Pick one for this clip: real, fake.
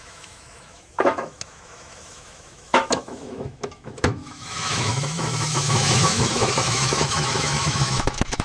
fake